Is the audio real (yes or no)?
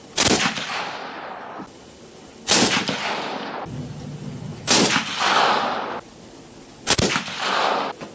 yes